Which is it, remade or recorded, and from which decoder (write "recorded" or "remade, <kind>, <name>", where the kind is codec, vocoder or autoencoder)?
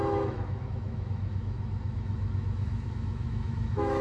remade, autoencoder, DAC-VAE